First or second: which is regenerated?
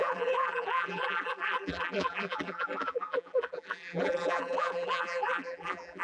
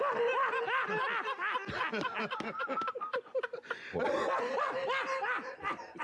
first